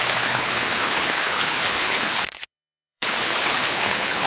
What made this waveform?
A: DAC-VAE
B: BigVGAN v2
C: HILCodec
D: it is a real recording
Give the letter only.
C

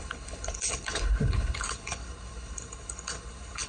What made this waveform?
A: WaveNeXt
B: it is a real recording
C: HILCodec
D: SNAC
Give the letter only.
C